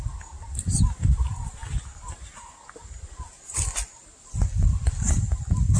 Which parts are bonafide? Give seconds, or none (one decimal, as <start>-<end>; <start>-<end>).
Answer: 0.0-5.8